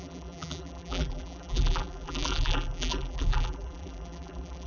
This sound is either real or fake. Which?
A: fake